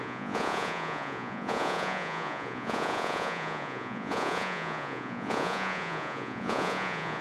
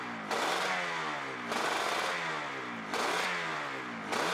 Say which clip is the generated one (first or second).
first